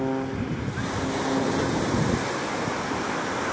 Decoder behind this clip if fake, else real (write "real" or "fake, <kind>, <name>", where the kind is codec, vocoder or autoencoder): real